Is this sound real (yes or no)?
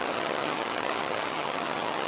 no